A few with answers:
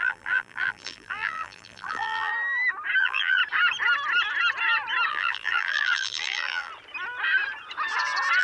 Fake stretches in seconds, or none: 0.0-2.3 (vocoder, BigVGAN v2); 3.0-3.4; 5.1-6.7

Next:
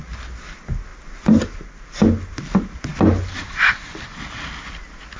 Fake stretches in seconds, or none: none

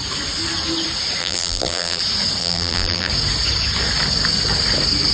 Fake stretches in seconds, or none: 1.2-2.0 (vocoder, BigVGAN v2); 2.4-3.1

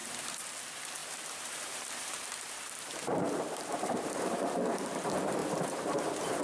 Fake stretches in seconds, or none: 0.0-0.5 (vocoder, BigVGAN v2); 1.0-4.5; 5.4-6.4

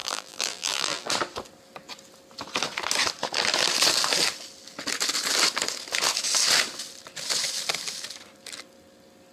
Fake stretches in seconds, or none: 0.0-1.1 (vocoder, BigVGAN v2)